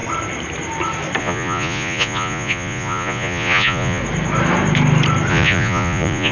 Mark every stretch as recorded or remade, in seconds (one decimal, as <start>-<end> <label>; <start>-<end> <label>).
0.0-1.2 recorded; 1.2-4.0 remade; 4.0-5.3 recorded; 5.3-6.3 remade